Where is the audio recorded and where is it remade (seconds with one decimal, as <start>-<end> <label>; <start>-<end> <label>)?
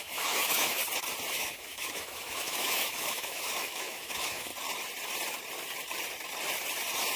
0.0-0.8 remade; 0.8-1.3 recorded; 1.3-4.5 remade; 4.5-7.2 recorded